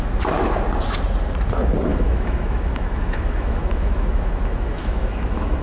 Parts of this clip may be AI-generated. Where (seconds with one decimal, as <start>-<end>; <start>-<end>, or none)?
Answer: 1.9-5.6